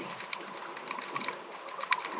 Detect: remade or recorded recorded